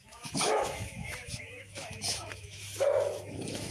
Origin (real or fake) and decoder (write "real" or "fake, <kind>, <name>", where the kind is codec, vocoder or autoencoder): fake, autoencoder, DAC-VAE